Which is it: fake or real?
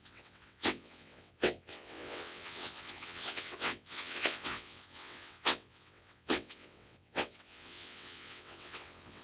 fake